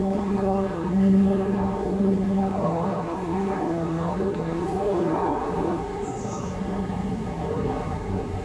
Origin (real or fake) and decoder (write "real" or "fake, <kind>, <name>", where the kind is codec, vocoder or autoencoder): fake, codec, SNAC